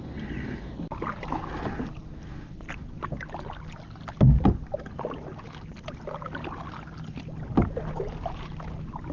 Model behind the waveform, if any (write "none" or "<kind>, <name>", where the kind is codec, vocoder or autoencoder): none